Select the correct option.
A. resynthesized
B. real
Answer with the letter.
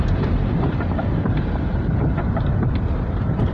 A